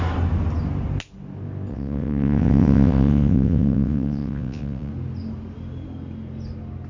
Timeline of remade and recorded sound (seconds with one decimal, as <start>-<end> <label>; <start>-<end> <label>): 0.0-1.7 recorded; 1.7-4.9 remade; 4.9-6.9 recorded